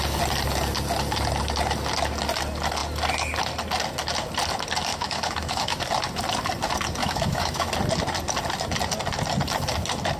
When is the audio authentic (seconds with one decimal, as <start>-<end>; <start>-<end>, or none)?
0.0-4.9; 5.8-7.0; 7.7-10.2